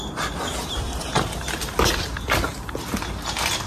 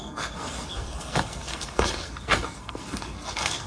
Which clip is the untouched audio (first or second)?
first